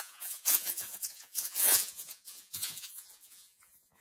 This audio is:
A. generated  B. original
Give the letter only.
A